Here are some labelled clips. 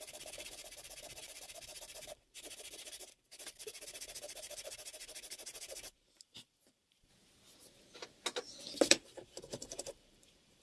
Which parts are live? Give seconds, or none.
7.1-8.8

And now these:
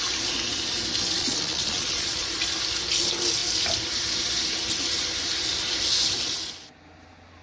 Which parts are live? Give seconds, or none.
0.0-1.2; 2.3-7.4